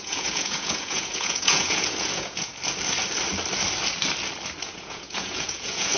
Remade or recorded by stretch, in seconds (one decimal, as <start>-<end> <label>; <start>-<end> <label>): 0.0-2.5 remade; 2.5-4.6 recorded; 4.6-6.0 remade